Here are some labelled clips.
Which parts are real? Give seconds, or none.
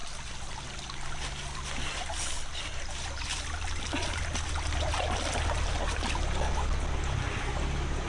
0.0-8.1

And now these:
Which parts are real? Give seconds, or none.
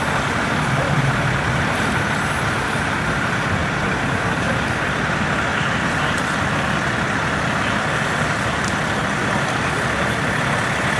0.0-3.6; 4.5-5.5; 6.2-11.0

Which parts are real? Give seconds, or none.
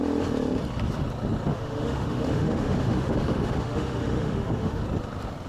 0.0-1.5; 4.8-5.5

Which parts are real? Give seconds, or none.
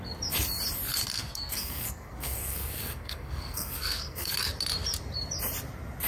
0.0-1.1; 4.3-6.1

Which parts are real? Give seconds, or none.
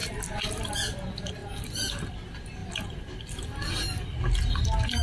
0.7-2.6; 3.2-5.0